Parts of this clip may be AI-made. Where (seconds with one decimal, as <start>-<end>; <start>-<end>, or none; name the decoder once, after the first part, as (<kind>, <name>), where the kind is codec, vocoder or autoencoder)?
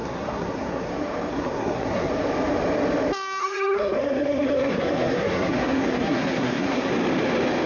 0.0-0.9 (codec, SNAC); 1.3-2.1; 3.4-6.9